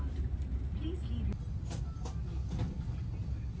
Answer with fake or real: real